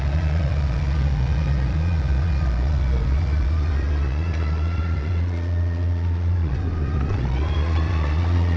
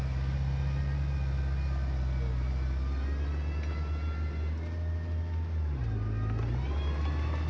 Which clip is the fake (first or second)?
first